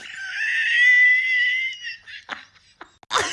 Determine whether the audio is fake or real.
real